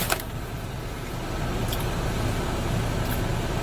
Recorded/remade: recorded